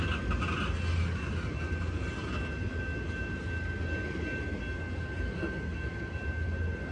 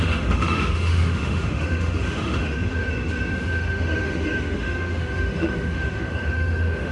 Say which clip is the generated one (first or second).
second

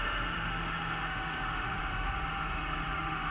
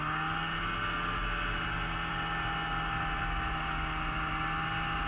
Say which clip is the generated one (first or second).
first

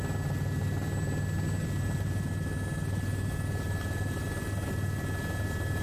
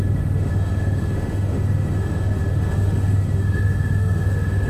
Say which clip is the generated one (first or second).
second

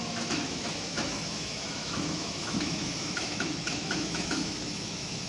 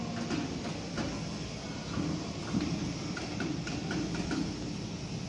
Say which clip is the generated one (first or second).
first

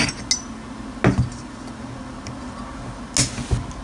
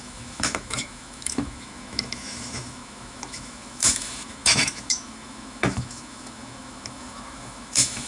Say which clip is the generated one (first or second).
second